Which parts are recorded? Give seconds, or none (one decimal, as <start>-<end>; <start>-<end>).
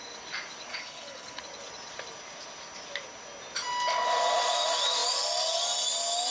0.0-0.7; 1.4-6.3